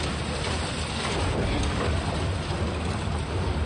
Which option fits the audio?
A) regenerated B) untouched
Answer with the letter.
A